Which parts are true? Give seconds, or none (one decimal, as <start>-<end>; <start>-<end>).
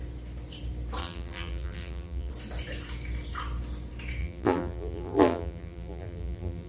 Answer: 0.0-1.0; 2.3-4.2